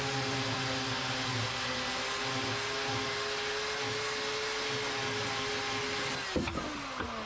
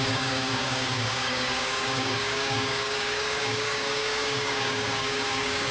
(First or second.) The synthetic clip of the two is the second